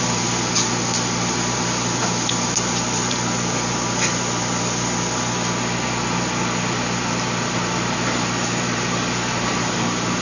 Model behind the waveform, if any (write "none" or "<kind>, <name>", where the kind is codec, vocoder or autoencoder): none